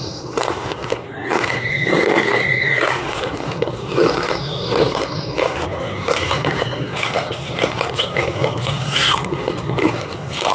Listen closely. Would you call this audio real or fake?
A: fake